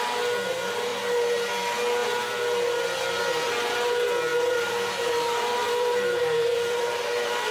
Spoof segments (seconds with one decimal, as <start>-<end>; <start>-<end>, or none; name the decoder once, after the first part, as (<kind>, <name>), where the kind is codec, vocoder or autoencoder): 0.9-1.5 (vocoder, BigVGAN v2); 4.3-7.5